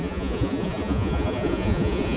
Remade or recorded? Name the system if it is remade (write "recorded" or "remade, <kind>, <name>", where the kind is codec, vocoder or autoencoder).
remade, vocoder, Vocos